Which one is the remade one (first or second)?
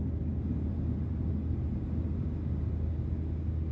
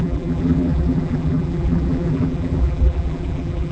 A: second